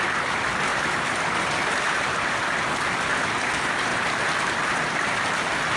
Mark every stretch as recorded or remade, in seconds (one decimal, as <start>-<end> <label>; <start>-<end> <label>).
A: 0.0-5.8 recorded